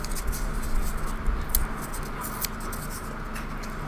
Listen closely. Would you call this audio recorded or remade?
recorded